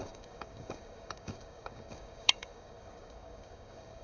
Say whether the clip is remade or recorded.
remade